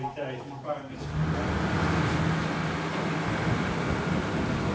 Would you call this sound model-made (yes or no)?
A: no